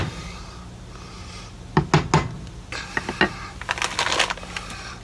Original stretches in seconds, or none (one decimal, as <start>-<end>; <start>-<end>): 0.0-5.0